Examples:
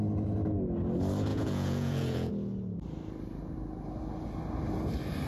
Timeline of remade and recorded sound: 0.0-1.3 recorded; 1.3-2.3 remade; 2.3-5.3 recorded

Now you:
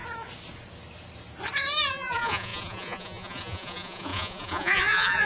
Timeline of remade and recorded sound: 0.0-1.9 recorded; 1.9-5.3 remade

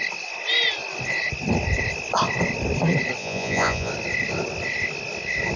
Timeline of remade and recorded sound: 0.0-3.2 recorded; 3.2-3.9 remade; 3.9-5.6 recorded

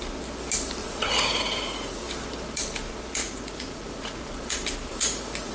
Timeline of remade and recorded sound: 0.0-0.8 recorded; 0.8-2.0 remade; 2.0-3.2 recorded; 3.2-4.2 remade; 4.2-4.9 recorded; 4.9-5.5 remade